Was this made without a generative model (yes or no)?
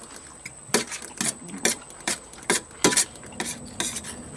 yes